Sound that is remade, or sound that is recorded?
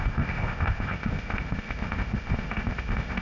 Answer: remade